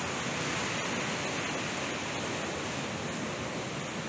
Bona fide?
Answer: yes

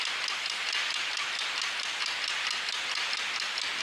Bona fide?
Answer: yes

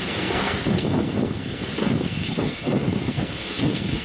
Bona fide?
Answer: no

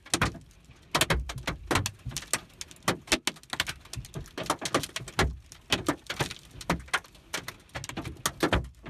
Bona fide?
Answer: yes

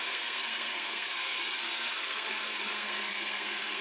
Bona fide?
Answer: no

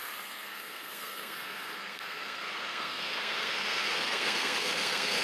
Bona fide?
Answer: no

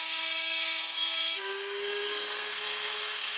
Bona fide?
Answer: no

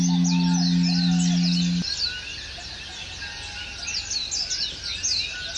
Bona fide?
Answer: yes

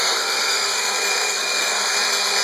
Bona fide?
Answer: no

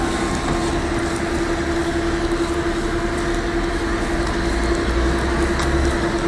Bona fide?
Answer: yes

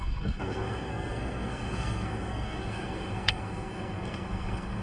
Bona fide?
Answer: no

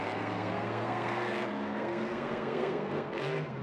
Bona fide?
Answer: no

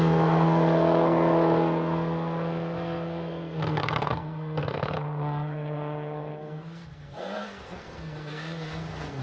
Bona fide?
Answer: no